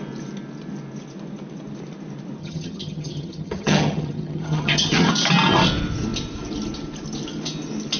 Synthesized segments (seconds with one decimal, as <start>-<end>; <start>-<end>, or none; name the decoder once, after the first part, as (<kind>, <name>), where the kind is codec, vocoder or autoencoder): 2.4-5.1 (vocoder, HiFi-GAN)